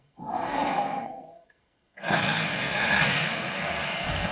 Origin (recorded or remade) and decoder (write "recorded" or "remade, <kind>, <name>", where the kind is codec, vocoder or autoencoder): remade, codec, SNAC